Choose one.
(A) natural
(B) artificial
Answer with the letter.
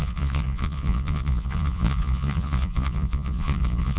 B